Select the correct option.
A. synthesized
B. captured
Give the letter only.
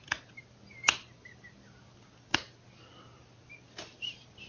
B